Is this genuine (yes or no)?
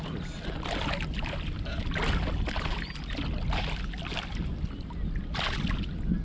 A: yes